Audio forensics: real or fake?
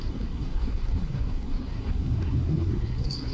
fake